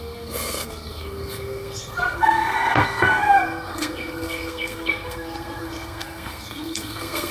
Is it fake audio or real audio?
fake